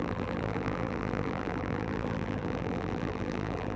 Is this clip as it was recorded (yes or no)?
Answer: no